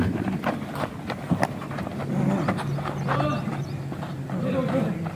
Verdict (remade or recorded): recorded